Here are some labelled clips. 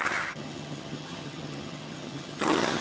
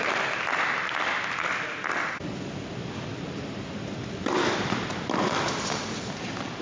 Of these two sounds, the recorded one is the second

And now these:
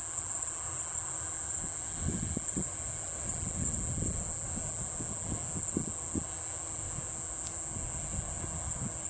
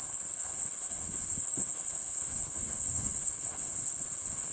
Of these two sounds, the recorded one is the first